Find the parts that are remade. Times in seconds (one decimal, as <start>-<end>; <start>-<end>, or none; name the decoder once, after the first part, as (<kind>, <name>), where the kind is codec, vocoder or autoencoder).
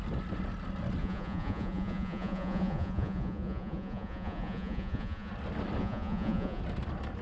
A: 1.0-5.3 (vocoder, Vocos); 5.8-6.6